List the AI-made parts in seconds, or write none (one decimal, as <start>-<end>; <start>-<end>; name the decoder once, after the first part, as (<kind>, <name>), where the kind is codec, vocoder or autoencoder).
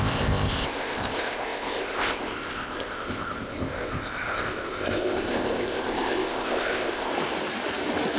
0.0-7.1 (codec, ZipCodec)